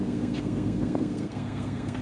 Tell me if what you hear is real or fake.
fake